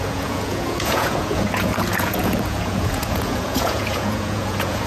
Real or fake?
fake